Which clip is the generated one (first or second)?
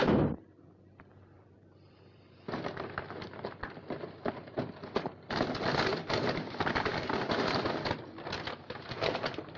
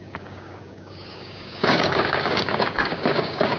second